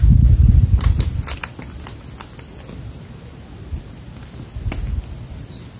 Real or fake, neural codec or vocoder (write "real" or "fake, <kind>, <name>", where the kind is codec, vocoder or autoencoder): real